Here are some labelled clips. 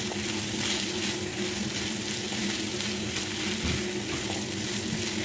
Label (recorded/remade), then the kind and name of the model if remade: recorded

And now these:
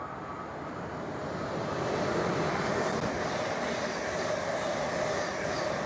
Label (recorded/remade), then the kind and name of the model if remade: recorded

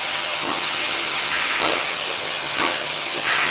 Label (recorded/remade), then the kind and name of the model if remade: remade, vocoder, HiFi-GAN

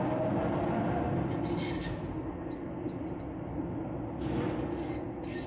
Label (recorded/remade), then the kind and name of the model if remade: recorded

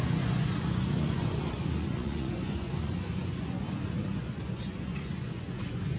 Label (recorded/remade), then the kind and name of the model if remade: remade, vocoder, Vocos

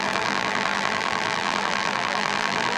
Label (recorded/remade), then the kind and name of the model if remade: remade, vocoder, BigVGAN v2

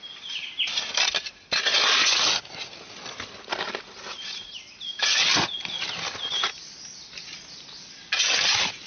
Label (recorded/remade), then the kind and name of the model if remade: recorded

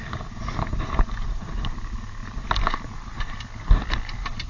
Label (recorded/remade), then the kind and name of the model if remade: recorded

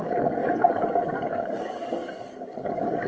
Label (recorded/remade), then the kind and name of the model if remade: remade, codec, DAC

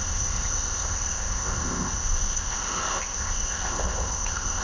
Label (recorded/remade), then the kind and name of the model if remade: remade, codec, ZipCodec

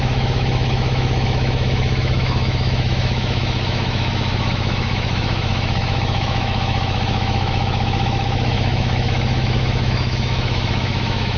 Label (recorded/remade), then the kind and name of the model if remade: remade, autoencoder, DAC-VAE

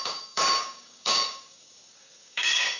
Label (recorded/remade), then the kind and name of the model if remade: remade, codec, DAC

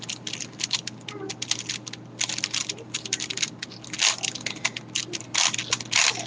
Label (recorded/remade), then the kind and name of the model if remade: recorded